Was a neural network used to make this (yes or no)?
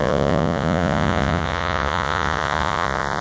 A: yes